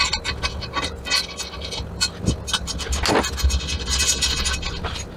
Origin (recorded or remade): recorded